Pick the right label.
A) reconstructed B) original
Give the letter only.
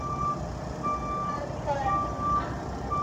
B